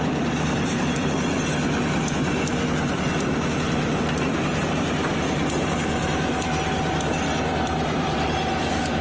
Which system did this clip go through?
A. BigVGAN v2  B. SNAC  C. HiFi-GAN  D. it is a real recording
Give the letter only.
A